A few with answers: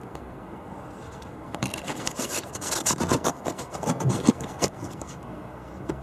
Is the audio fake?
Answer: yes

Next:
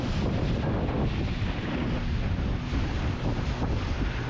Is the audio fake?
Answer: no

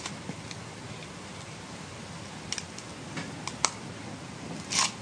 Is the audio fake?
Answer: no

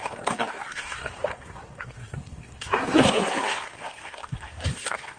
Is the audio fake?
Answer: yes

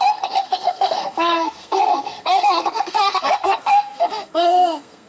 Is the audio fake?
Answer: yes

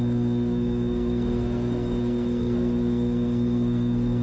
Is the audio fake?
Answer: yes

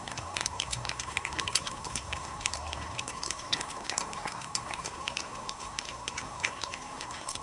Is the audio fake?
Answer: yes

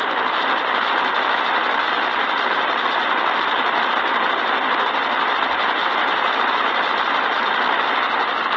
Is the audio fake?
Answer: no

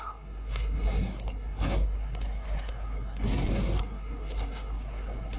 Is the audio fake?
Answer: yes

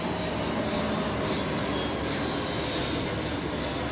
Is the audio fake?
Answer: no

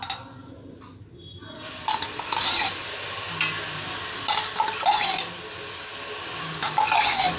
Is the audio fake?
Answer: no